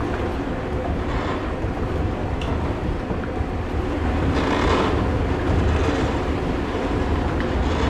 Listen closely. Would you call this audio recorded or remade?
recorded